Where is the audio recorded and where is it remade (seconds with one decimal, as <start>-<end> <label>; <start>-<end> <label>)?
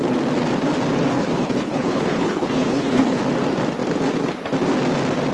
0.0-1.1 recorded; 1.1-3.2 remade; 3.2-5.3 recorded